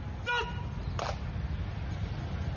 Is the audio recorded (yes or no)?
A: yes